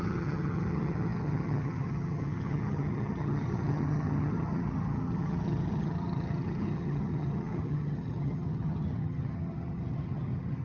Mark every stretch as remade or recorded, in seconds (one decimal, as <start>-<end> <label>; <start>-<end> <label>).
0.0-10.6 remade